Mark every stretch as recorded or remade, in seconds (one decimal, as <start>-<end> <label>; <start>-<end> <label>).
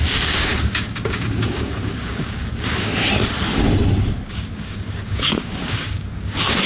0.0-2.9 remade; 2.9-4.3 recorded; 4.3-6.7 remade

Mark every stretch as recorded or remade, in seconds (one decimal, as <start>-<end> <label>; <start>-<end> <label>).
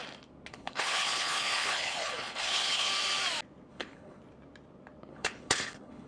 0.0-0.5 recorded; 0.5-2.9 remade; 2.9-3.7 recorded; 3.7-4.2 remade; 4.2-5.1 recorded; 5.1-6.1 remade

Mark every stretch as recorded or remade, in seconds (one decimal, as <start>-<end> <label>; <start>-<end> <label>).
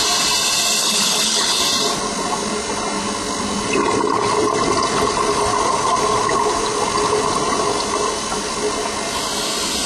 0.0-0.8 recorded; 0.8-1.6 remade; 1.6-9.9 recorded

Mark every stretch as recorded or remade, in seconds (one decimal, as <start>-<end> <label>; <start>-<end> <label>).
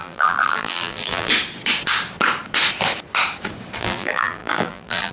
0.0-1.3 remade; 1.3-3.8 recorded; 3.8-5.1 remade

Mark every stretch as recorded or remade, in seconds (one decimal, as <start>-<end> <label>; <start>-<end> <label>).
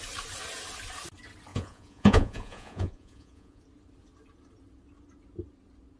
0.0-1.5 recorded; 1.5-3.6 remade; 3.6-6.0 recorded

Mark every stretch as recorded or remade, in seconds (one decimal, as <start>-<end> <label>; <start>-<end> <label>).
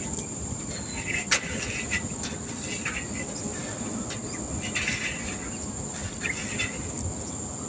0.0-7.7 recorded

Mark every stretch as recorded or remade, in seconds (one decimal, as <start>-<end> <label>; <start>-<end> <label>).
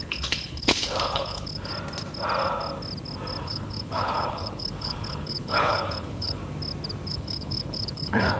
0.0-1.7 remade; 1.7-3.4 recorded; 3.4-6.4 remade; 6.4-7.1 recorded; 7.1-8.4 remade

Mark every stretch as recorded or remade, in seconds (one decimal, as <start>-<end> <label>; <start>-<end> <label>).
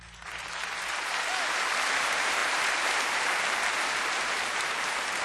0.0-5.2 remade